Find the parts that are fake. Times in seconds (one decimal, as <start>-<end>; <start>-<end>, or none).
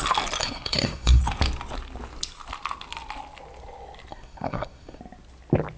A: 0.4-1.2; 4.1-5.0